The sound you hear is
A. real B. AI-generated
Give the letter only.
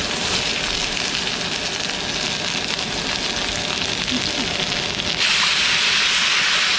A